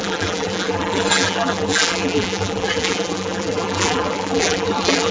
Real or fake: fake